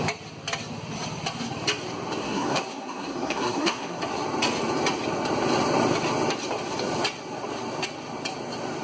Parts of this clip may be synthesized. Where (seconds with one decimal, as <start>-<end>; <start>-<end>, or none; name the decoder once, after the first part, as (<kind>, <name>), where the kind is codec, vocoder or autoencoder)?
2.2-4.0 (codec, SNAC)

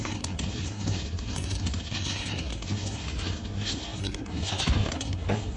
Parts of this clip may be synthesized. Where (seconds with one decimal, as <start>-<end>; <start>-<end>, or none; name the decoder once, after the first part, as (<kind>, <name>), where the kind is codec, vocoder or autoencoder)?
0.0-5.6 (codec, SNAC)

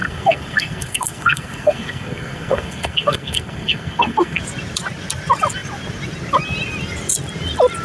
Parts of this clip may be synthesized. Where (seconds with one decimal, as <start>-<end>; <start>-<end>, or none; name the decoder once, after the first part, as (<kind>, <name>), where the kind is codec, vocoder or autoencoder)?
0.0-4.4 (codec, SNAC)

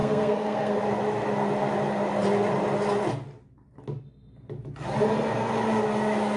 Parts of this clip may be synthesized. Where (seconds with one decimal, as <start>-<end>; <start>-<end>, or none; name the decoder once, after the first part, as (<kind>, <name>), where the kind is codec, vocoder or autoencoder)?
0.0-0.8 (codec, SNAC)

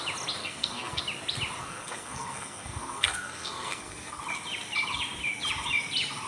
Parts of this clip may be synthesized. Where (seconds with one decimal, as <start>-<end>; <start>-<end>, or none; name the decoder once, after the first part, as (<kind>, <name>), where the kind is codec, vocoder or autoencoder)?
0.4-1.0 (codec, SNAC); 1.6-4.2